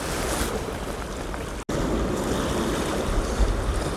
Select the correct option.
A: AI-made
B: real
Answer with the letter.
B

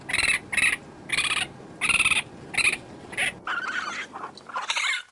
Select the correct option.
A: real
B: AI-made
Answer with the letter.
A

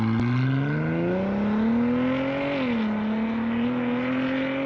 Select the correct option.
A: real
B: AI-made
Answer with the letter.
A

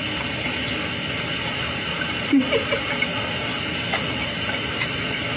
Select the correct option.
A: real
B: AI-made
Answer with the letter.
A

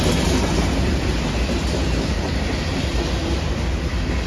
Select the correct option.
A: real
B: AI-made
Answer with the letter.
A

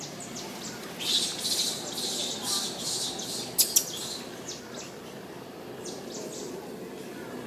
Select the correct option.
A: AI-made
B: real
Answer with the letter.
B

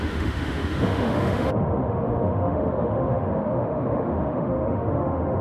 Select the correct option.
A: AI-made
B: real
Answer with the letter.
A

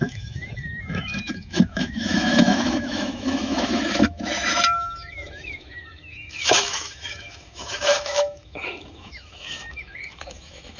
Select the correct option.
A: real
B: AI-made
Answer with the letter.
B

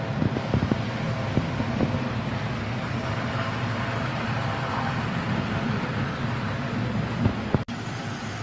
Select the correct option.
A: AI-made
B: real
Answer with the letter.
B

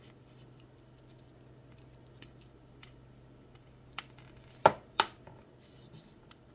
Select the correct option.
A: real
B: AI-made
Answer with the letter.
B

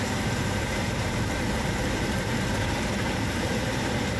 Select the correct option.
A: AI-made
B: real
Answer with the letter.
A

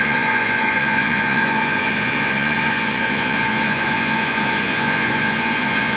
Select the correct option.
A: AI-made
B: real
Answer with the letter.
A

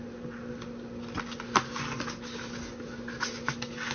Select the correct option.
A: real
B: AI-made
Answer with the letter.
A